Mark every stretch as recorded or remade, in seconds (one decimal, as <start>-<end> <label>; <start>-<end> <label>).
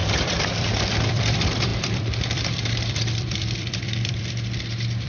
0.0-5.1 remade